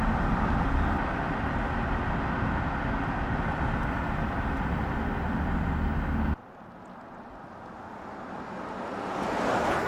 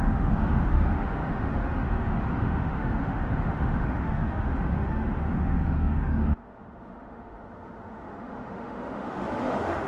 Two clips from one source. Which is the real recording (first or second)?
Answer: first